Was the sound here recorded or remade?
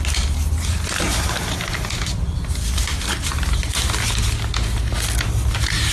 recorded